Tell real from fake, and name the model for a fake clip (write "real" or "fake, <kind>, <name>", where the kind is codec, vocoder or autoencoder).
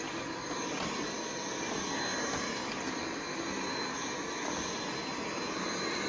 real